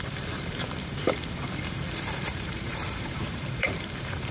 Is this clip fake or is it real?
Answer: fake